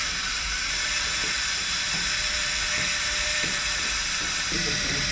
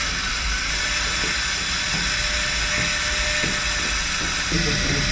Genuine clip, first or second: second